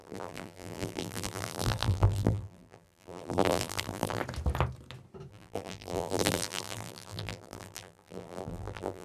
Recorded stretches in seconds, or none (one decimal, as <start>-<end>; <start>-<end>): 4.2-5.3